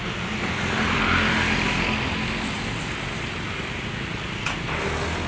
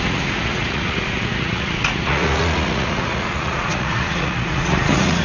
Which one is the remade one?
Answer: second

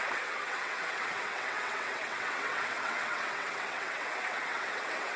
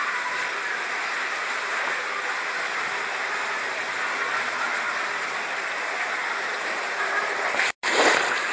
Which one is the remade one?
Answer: first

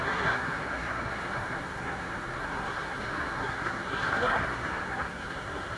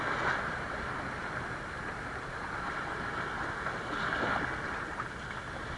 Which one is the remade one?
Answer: first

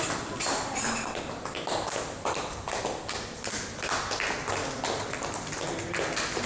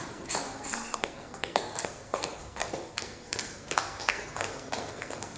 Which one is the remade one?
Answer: second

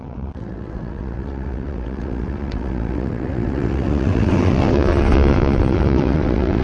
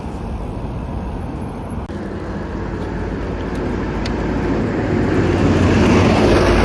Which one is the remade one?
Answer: first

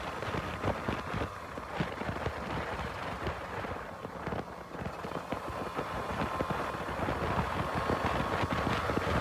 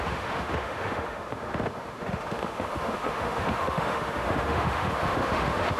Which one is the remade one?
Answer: second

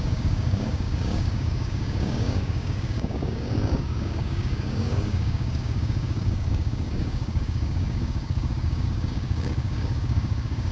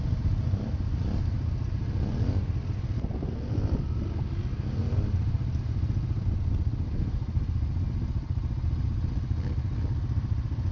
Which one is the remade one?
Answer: first